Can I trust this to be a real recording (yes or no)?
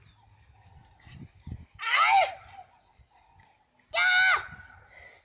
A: yes